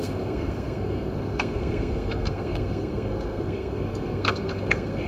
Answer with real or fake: fake